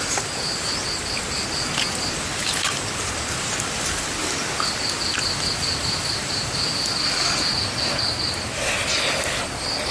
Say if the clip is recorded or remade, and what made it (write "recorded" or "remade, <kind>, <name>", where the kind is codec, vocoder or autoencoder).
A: recorded